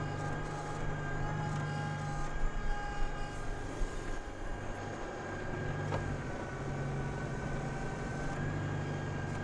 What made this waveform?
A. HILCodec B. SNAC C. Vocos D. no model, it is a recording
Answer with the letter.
D